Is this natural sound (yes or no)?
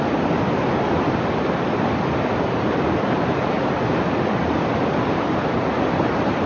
no